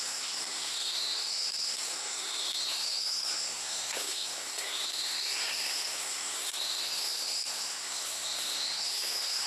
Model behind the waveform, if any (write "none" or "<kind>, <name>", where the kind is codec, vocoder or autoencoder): codec, SNAC